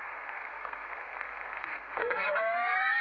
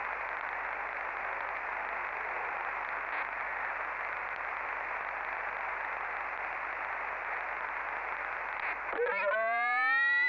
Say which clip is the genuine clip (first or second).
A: second